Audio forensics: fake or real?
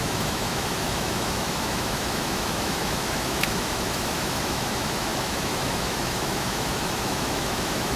fake